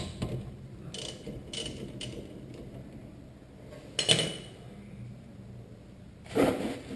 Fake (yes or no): no